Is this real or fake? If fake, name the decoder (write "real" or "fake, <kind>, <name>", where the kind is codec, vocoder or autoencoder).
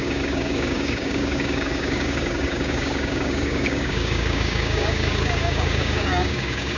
fake, codec, DAC